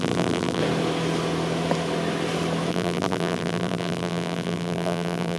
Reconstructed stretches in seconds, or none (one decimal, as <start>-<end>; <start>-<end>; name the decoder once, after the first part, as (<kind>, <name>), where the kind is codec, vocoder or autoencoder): 0.0-0.6 (vocoder, BigVGAN v2); 2.7-5.4